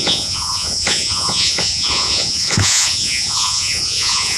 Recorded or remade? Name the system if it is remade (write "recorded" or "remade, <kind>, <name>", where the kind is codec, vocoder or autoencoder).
remade, vocoder, Vocos